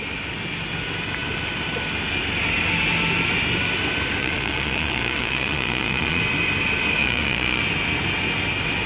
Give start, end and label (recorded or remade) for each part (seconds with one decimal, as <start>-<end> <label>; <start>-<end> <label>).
0.0-4.2 recorded; 4.2-6.2 remade; 6.2-7.0 recorded; 7.0-7.6 remade; 7.6-8.9 recorded